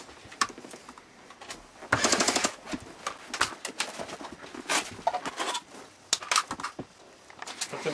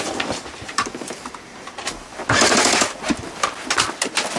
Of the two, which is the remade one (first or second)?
second